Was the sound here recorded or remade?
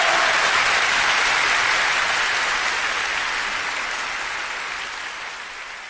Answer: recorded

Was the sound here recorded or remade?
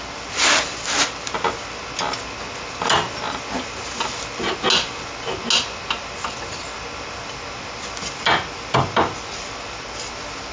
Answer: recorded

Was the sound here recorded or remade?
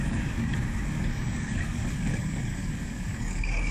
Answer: remade